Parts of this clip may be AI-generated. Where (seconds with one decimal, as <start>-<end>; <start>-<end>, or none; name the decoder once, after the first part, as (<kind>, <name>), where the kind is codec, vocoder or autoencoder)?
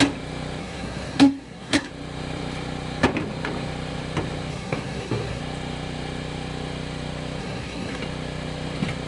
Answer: 0.6-1.9 (codec, SNAC); 4.5-5.4; 7.4-8.0